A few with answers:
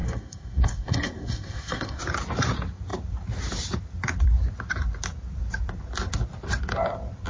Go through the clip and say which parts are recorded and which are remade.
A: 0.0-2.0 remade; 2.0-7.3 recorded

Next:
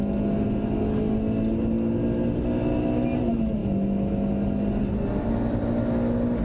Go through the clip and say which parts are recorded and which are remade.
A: 0.0-6.4 recorded

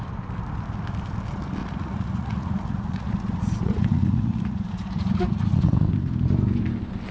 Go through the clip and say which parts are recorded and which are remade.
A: 0.0-1.6 recorded; 1.6-5.9 remade; 5.9-7.1 recorded